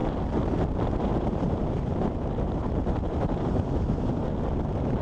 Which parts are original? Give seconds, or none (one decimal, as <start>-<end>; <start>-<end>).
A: 0.0-1.1; 4.1-5.0